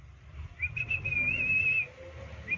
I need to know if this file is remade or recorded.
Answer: recorded